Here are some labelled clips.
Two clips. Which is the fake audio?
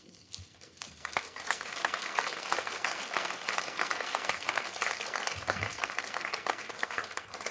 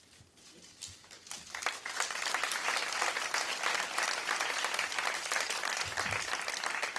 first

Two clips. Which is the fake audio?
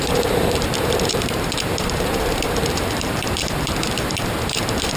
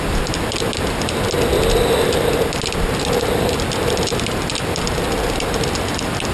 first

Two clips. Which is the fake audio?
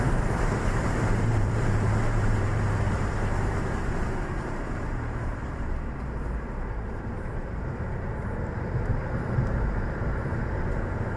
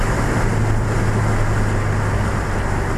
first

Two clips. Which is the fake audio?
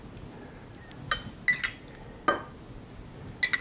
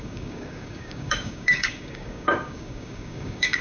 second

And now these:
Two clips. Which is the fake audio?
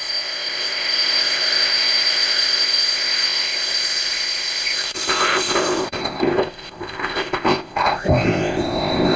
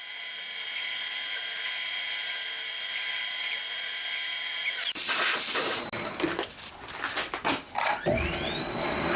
first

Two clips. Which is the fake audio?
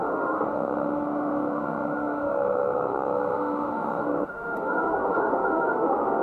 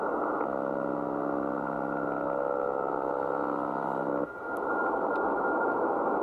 first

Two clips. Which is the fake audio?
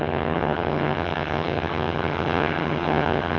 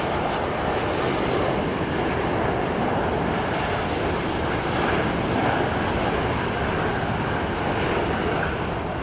first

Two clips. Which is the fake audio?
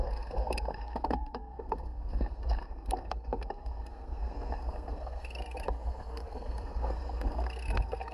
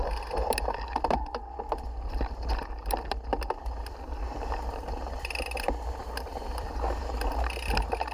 first